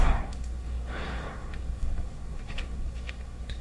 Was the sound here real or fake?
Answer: fake